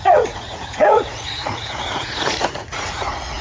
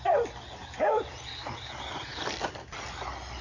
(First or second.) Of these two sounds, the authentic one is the second